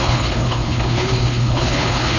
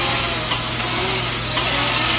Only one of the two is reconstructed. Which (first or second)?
first